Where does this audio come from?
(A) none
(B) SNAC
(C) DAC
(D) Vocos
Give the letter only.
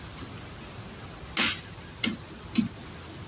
A